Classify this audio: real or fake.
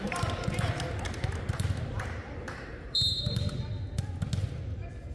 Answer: real